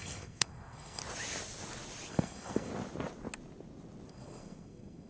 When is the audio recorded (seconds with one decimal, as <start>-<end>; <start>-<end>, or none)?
1.0-2.1; 2.7-4.1